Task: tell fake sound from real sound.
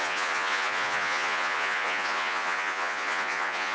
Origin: fake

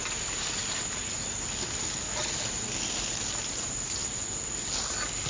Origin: real